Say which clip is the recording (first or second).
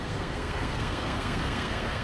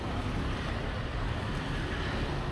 second